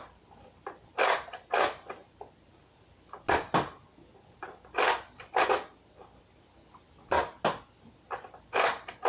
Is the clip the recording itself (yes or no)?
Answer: yes